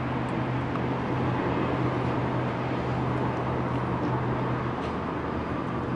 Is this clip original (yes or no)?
yes